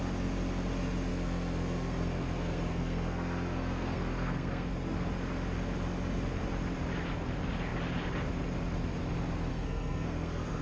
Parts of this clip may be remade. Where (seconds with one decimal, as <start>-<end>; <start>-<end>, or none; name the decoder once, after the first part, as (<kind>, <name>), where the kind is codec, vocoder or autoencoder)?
1.1-4.7 (codec, SNAC); 9.5-10.6